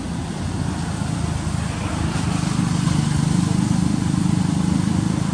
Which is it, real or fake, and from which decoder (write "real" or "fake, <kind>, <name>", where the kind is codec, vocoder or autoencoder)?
real